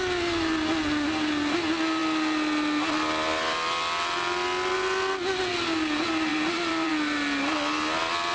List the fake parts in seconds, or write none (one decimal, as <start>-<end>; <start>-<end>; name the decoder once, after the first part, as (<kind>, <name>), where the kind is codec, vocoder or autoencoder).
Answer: 6.3-6.9 (vocoder, BigVGAN v2)